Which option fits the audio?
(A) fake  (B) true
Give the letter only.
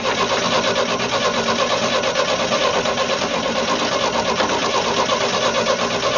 B